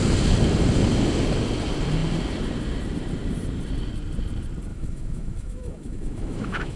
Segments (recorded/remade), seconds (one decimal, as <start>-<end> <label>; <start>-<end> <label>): 0.0-4.7 recorded; 4.7-6.8 remade

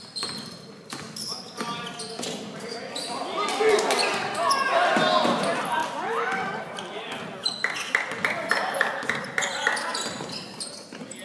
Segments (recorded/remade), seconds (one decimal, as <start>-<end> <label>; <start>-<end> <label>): 0.0-11.2 recorded